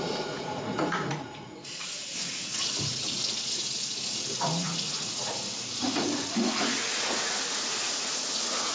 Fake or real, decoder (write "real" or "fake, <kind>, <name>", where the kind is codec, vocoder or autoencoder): fake, vocoder, Vocos